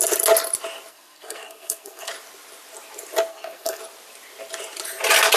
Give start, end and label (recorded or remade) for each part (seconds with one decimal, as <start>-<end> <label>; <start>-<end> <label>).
0.0-0.9 recorded; 0.9-2.1 remade; 2.1-3.3 recorded; 3.3-3.8 remade; 3.8-5.4 recorded